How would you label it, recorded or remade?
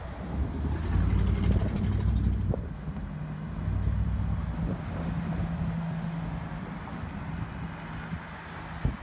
recorded